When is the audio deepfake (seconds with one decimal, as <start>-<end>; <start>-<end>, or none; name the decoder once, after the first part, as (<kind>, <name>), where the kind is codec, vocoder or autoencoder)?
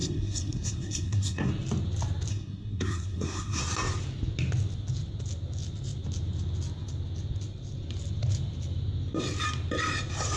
0.0-1.5 (codec, SNAC); 2.3-3.6